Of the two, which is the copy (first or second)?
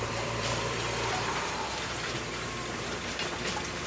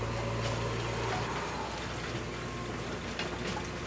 first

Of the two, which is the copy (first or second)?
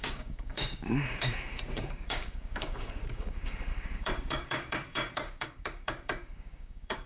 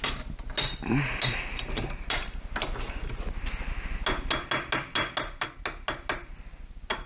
first